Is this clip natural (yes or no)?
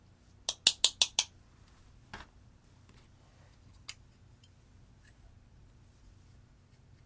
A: yes